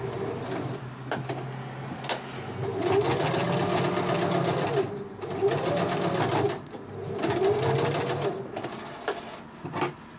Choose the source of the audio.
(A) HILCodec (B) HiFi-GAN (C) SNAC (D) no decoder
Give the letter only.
D